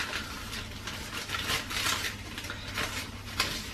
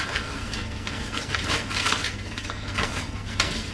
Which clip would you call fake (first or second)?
second